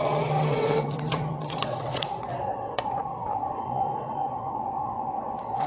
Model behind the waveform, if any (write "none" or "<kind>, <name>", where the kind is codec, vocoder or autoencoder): vocoder, WaveNeXt